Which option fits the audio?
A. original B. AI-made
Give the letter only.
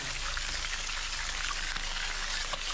B